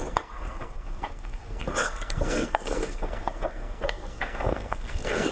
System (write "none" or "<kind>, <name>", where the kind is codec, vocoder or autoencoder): codec, SNAC